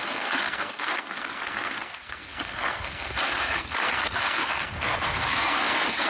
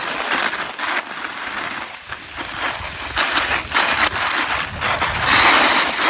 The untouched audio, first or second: second